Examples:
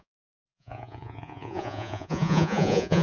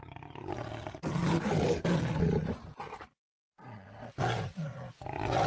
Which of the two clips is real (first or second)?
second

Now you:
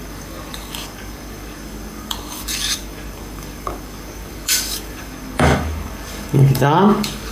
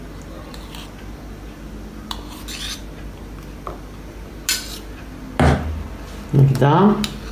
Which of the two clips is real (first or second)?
second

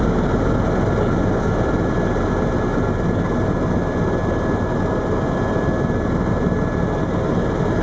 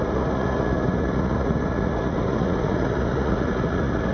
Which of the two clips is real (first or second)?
first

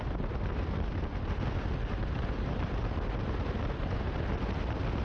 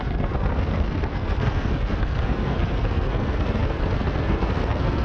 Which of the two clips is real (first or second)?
first